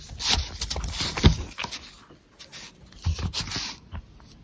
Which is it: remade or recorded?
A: recorded